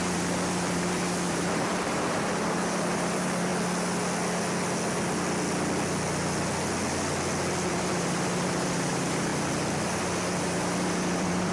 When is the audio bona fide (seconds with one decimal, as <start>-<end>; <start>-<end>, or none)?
3.5-7.7; 9.3-10.4

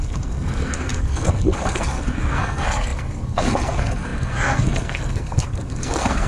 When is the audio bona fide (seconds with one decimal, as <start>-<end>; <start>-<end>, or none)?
none

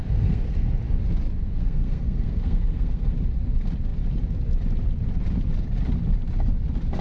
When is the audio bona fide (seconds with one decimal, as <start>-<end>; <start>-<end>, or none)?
0.7-1.4; 3.1-7.0